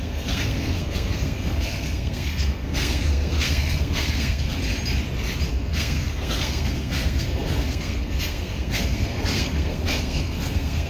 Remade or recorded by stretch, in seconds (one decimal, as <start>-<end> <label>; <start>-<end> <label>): 0.0-4.6 remade; 4.6-5.5 recorded; 5.5-10.9 remade